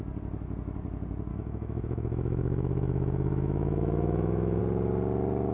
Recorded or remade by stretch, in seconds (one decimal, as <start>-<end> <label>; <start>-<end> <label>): 0.0-1.3 recorded; 1.3-4.6 remade; 4.6-5.5 recorded